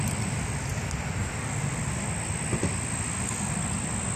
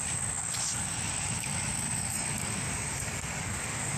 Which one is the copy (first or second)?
second